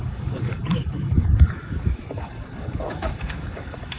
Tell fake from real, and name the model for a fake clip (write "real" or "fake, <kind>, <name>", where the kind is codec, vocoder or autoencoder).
fake, codec, DAC